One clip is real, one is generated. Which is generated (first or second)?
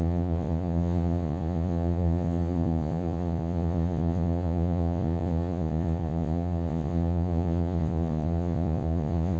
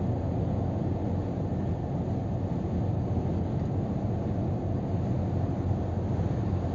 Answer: first